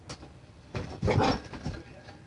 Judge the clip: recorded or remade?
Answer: recorded